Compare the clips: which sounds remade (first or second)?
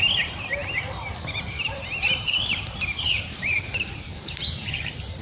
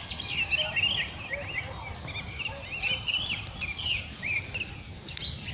first